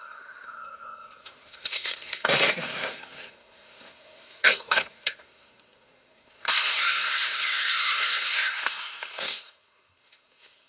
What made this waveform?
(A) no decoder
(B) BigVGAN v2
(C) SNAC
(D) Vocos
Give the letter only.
C